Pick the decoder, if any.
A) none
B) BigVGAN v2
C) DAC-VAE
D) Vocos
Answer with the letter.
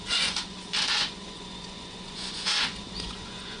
D